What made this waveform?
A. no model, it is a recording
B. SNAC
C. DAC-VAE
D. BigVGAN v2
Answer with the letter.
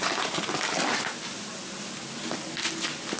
A